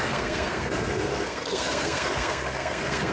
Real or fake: fake